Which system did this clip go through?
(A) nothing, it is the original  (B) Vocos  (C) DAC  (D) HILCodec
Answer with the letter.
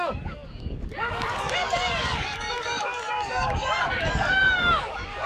C